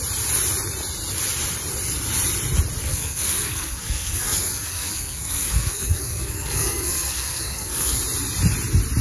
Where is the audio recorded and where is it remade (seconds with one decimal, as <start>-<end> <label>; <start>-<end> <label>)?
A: 0.0-2.8 recorded; 2.8-8.0 remade; 8.0-9.0 recorded